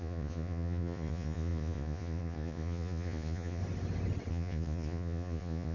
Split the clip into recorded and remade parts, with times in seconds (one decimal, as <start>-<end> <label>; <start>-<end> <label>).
0.0-3.6 remade; 3.6-4.3 recorded; 4.3-5.7 remade

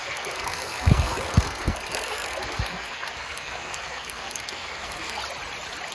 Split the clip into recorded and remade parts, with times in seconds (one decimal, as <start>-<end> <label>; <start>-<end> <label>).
0.0-5.2 remade; 5.2-5.9 recorded

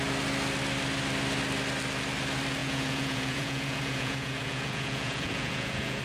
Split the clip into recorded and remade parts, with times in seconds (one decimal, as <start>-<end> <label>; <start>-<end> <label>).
0.0-2.6 recorded; 2.6-6.0 remade

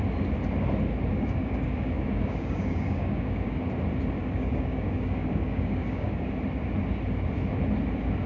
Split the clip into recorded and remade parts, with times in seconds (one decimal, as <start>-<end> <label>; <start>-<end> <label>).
0.0-1.1 recorded; 1.1-3.6 remade; 3.6-4.2 recorded; 4.2-6.3 remade; 6.3-8.3 recorded

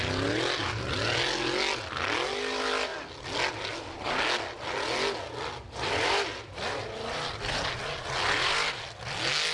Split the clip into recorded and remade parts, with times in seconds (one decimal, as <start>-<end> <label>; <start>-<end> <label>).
0.0-9.5 recorded